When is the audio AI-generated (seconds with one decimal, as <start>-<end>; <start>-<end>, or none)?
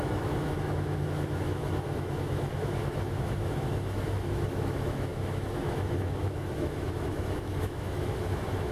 0.0-8.7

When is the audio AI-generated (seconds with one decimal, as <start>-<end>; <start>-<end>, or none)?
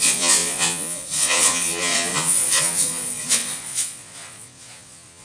0.0-5.2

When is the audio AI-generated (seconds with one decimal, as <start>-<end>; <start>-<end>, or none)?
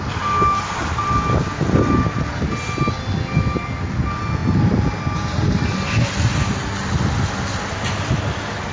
none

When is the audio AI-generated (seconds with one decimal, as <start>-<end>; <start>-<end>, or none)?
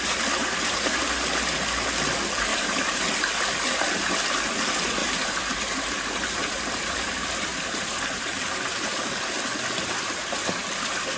0.4-1.0; 2.5-3.0; 5.0-7.1; 7.5-9.1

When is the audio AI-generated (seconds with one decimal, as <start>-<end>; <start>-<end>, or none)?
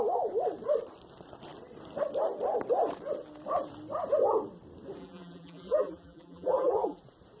5.0-7.0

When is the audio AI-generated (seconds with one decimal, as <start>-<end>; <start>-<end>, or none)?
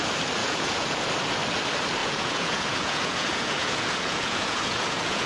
0.4-1.1; 2.0-5.3